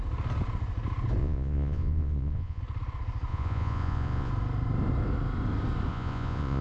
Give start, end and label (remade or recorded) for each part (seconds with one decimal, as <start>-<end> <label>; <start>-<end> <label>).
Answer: 0.0-1.2 recorded; 1.2-2.6 remade; 2.6-3.3 recorded; 3.3-4.3 remade; 4.3-5.9 recorded; 5.9-6.6 remade

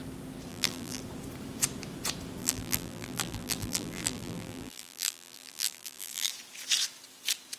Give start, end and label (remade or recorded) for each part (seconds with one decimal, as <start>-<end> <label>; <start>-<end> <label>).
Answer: 0.0-0.5 recorded; 0.5-1.0 remade; 1.0-2.4 recorded; 2.4-6.3 remade; 6.3-7.6 recorded

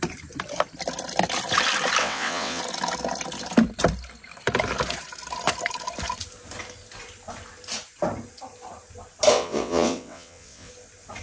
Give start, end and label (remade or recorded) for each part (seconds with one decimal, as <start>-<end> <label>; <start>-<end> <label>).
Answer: 0.0-2.0 recorded; 2.0-2.6 remade; 2.6-9.3 recorded; 9.3-10.7 remade; 10.7-11.2 recorded

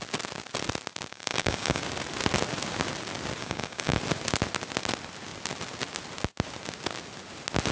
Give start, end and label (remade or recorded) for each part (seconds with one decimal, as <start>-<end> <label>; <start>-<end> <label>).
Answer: 0.0-1.1 recorded; 1.1-1.8 remade; 1.8-3.4 recorded; 3.4-4.0 remade; 4.0-7.7 recorded

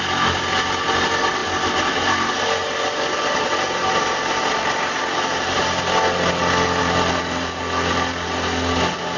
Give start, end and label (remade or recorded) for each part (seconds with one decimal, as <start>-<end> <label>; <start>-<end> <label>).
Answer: 0.0-6.8 recorded; 6.8-7.6 remade; 7.6-9.2 recorded